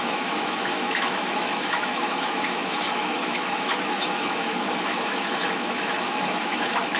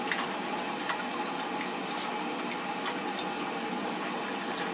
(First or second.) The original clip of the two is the second